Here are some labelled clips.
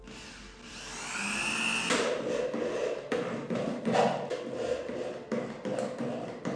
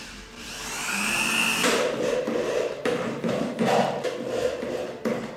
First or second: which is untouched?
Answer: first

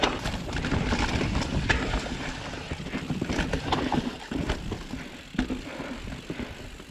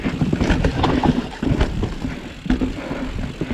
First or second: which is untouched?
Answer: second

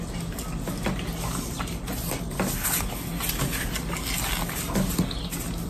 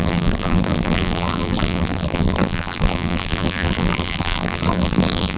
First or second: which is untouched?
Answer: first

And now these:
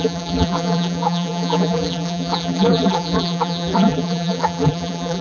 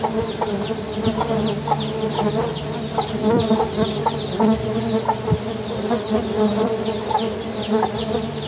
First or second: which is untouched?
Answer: second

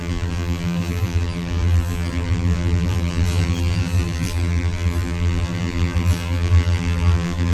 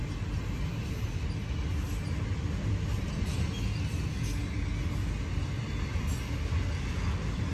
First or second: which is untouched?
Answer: second